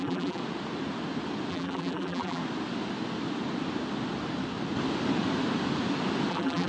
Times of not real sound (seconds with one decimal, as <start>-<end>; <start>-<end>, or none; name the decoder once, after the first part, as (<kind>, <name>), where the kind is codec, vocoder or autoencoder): 0.0-0.4 (vocoder, BigVGAN v2); 1.5-2.4; 6.3-6.7

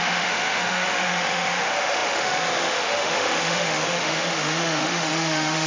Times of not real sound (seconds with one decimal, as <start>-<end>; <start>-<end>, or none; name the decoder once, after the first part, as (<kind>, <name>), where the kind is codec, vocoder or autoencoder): 0.0-5.7 (autoencoder, DAC-VAE)

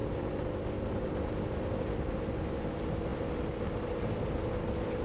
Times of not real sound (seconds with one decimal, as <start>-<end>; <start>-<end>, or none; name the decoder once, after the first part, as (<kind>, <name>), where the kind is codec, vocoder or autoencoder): none